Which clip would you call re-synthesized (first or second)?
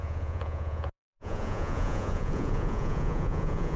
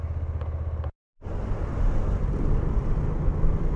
first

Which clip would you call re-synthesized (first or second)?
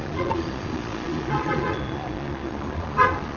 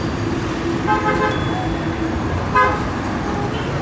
first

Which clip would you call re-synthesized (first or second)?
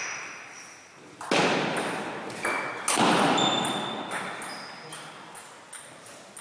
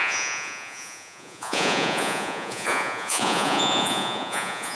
second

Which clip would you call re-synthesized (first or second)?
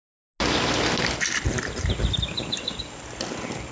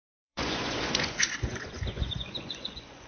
second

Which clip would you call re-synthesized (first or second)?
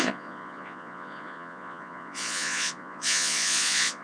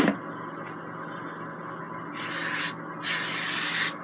first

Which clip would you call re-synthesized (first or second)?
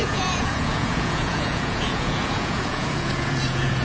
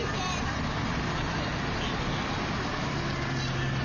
first